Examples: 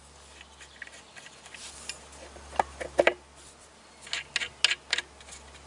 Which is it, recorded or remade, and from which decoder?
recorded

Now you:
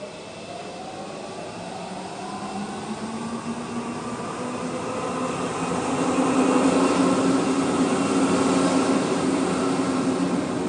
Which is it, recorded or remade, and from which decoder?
recorded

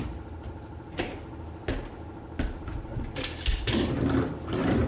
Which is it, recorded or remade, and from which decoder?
recorded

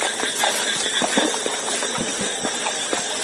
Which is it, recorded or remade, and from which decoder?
recorded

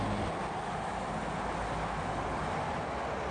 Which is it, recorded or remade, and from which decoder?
recorded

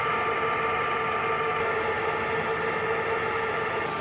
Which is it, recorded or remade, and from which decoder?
recorded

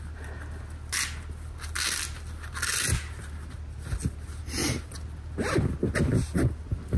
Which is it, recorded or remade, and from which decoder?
recorded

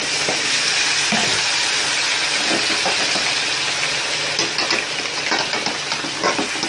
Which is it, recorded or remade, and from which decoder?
recorded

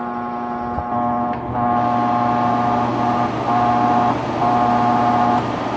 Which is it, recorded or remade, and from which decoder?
recorded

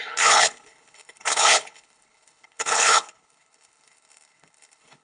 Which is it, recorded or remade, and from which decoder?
remade, codec, HILCodec